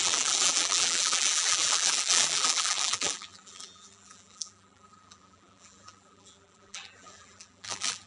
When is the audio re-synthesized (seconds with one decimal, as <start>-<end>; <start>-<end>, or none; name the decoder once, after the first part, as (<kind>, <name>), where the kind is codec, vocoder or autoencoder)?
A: 0.0-8.1 (vocoder, BigVGAN v2)